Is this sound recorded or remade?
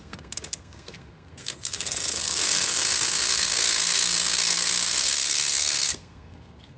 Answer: remade